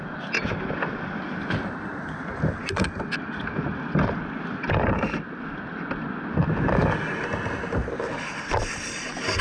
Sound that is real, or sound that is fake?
real